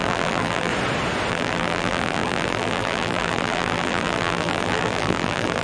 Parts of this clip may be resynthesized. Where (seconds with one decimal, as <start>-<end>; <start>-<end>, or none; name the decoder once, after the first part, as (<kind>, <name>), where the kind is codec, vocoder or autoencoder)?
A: 0.0-0.7 (vocoder, BigVGAN v2); 1.3-5.6